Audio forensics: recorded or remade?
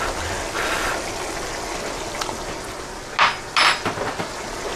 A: recorded